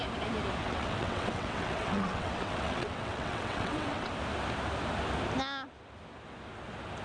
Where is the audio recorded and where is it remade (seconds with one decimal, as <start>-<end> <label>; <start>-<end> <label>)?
0.0-0.6 recorded; 0.6-4.1 remade; 4.1-7.0 recorded